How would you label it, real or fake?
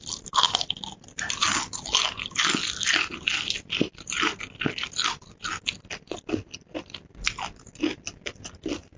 real